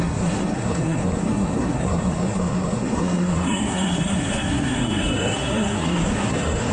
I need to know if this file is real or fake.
fake